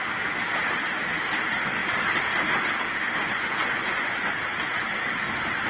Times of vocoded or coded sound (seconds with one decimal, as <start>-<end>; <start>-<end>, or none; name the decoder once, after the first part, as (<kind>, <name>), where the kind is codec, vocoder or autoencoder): 3.2-4.3 (vocoder, Vocos)